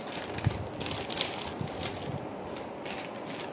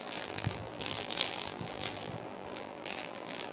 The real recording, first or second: first